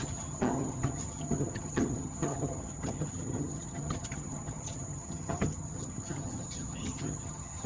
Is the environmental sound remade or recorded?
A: remade